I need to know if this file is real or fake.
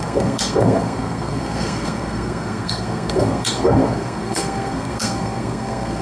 fake